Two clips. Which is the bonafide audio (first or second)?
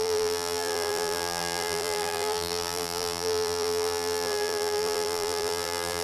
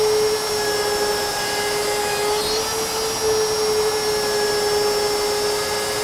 second